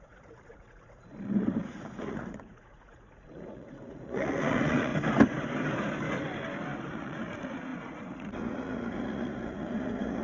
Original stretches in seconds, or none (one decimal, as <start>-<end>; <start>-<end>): 1.1-1.6; 4.9-6.9